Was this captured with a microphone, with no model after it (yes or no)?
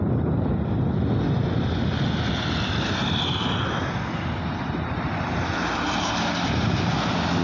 yes